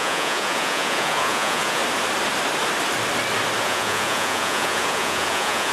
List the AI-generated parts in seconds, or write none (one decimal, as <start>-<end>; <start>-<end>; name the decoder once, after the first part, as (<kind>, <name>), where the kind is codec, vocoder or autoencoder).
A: 0.0-1.8 (vocoder, Vocos); 3.6-5.7

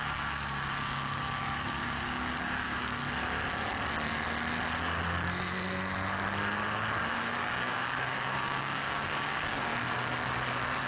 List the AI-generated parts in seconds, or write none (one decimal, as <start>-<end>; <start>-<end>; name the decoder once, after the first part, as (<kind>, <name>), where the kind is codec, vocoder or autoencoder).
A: 0.0-3.0 (codec, DAC); 7.0-9.7

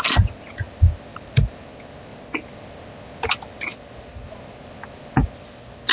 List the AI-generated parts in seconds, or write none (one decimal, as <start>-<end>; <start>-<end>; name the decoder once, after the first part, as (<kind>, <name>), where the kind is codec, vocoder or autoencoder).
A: 1.1-1.7 (vocoder, BigVGAN v2)

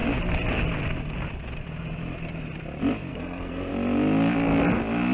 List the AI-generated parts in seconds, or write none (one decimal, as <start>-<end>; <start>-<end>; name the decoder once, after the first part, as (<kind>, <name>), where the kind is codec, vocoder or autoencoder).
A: 3.1-3.7 (codec, SNAC)